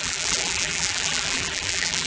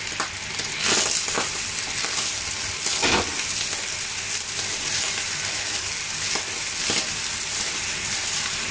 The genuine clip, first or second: second